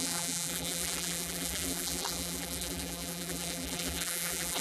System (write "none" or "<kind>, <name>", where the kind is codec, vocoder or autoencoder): vocoder, BigVGAN v2